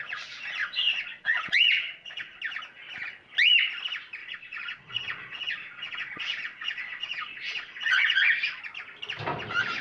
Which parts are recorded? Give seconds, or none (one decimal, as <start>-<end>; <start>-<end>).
0.0-0.6; 2.4-4.2; 8.6-9.8